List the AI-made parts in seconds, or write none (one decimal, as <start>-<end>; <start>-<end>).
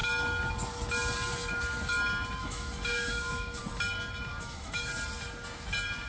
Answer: 2.4-3.6; 4.3-4.9